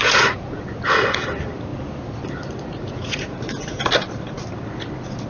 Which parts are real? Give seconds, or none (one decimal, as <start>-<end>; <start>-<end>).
0.6-2.7; 3.8-5.3